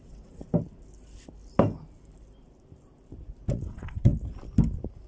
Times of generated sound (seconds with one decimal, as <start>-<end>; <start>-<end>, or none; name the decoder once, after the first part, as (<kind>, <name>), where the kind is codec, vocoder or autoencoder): 0.0-0.4 (vocoder, WaveNeXt); 3.5-4.1